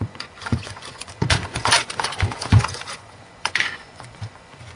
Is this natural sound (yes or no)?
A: no